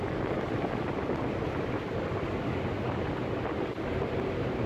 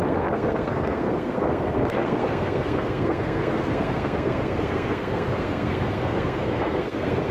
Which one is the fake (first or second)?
second